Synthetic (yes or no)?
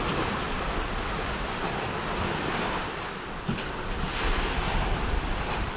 no